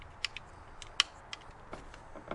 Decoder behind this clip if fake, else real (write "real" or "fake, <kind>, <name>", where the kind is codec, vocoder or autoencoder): real